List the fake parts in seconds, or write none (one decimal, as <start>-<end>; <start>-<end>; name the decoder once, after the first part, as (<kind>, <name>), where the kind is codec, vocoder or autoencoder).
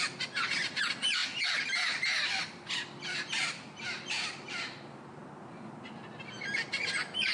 0.0-1.2 (vocoder, BigVGAN v2); 1.9-5.2; 6.7-7.3